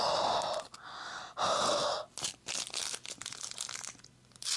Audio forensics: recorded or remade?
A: recorded